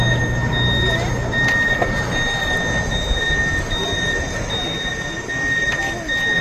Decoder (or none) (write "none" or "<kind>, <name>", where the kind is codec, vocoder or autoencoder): none